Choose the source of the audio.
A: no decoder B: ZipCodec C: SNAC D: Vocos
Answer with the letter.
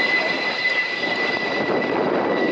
A